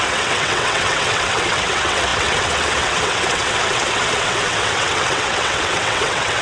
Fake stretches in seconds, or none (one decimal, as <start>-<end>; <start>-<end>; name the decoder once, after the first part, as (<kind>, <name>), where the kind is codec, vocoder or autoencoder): 0.0-6.4 (vocoder, WaveNeXt)